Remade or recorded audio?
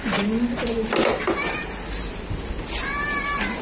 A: recorded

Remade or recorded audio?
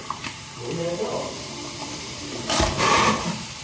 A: remade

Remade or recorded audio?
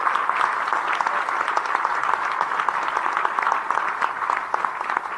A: recorded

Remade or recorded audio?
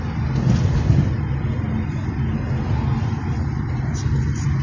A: recorded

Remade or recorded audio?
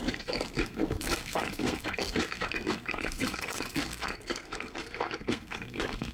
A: remade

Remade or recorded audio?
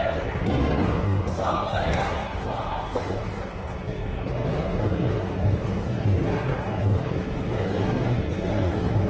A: remade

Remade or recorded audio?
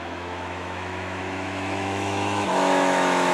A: remade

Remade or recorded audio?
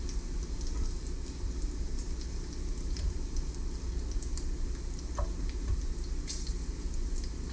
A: recorded